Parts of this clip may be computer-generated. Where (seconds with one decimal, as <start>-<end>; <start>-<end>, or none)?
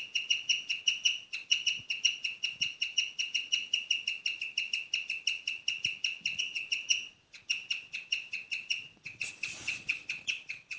0.0-3.6; 6.4-10.8